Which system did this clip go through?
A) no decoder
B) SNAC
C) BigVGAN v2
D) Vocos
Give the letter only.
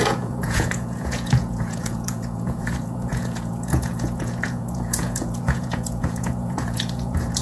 D